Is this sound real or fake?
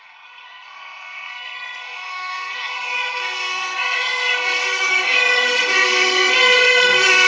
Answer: fake